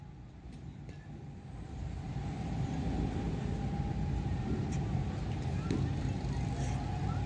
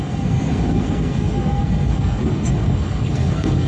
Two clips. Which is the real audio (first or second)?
first